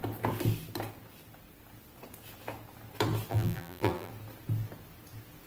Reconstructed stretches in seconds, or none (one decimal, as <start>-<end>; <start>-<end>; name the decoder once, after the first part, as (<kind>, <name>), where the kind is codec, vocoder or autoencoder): 3.3-4.1 (vocoder, BigVGAN v2)

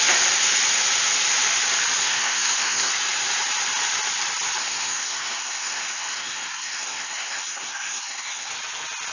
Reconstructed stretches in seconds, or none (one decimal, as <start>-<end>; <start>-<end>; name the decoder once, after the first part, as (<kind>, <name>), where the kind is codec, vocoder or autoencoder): 2.0-2.9 (codec, SNAC); 4.6-8.5

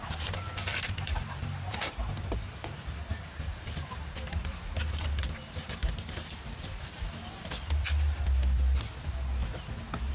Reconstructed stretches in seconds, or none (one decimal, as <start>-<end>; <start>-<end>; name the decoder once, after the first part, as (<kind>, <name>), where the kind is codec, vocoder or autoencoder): 0.7-5.8 (vocoder, BigVGAN v2)